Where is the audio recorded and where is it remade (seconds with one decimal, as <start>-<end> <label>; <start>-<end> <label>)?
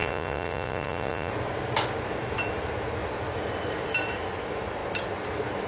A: 0.0-1.3 remade; 1.3-5.7 recorded